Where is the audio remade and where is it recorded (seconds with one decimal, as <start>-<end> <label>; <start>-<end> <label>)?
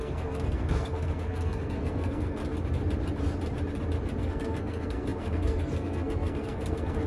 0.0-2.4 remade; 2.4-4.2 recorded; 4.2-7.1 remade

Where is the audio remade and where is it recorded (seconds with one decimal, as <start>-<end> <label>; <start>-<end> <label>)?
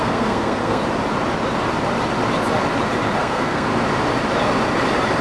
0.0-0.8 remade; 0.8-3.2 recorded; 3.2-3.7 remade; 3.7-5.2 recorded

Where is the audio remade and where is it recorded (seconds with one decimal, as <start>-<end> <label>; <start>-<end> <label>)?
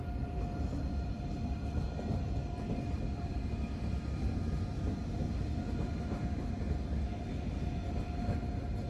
0.0-8.9 recorded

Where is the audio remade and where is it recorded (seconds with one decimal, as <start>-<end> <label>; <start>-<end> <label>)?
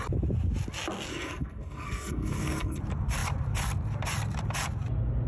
0.0-1.1 recorded; 1.1-2.8 remade; 2.8-5.3 recorded